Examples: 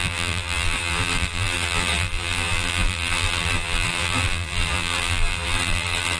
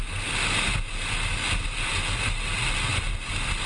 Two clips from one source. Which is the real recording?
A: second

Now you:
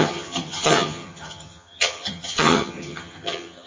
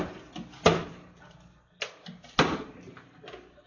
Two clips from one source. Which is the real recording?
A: second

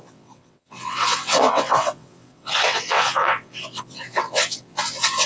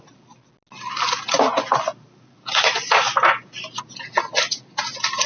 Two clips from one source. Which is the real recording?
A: second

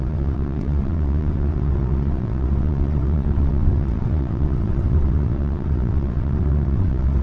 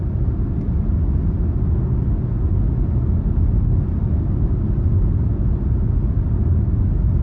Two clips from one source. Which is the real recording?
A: second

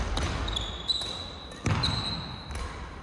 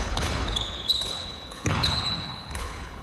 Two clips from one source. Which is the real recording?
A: first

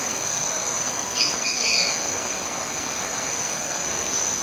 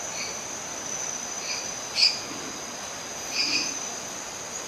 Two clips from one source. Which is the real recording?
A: second